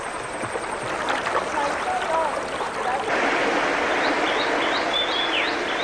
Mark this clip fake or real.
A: real